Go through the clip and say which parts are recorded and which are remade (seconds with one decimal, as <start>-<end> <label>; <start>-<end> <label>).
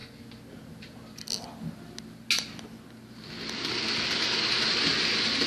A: 0.0-5.5 recorded